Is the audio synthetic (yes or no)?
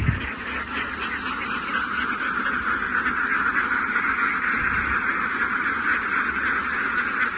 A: no